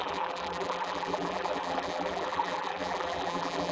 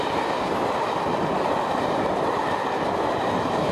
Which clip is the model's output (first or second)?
first